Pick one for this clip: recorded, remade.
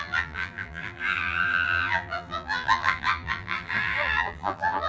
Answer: remade